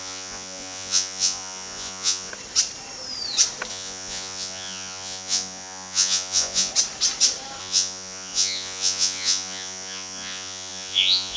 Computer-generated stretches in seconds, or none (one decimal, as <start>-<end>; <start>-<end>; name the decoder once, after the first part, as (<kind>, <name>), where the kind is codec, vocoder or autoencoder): 0.0-2.3 (vocoder, Vocos); 3.7-6.7; 7.6-11.4